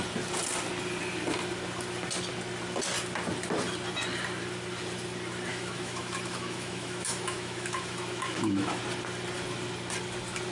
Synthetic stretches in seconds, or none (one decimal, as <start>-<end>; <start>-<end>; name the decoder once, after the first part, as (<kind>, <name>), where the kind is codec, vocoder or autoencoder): 5.5-8.8 (autoencoder, DAC-VAE)